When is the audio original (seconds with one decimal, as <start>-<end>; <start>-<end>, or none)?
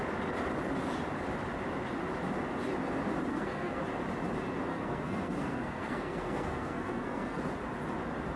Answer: 0.0-3.3; 3.8-4.7; 7.4-8.4